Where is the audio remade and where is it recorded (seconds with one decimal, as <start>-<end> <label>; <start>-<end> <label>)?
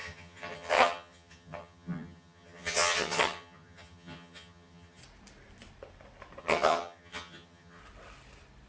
0.0-5.0 remade; 5.0-6.4 recorded; 6.4-7.8 remade; 7.8-8.7 recorded